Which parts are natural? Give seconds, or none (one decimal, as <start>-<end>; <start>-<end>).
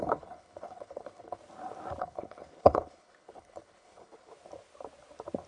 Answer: 1.4-2.0; 4.3-5.5